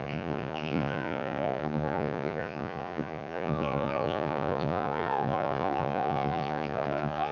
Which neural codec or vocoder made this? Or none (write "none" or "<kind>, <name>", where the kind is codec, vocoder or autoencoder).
vocoder, Vocos